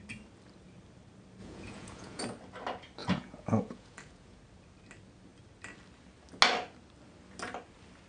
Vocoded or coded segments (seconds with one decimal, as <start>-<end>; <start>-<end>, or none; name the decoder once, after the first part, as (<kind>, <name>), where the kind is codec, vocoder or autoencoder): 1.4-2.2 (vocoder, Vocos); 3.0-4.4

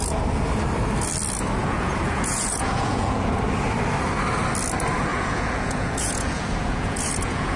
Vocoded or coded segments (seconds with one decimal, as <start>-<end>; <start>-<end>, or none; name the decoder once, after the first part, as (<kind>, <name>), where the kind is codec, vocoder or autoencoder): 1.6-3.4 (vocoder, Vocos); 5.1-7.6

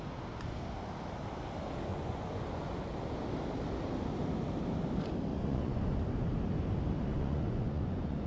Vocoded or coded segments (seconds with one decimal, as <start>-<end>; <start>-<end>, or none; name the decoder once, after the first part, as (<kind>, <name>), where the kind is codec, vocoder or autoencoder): 1.9-2.9 (vocoder, Vocos); 5.3-6.0; 7.1-8.3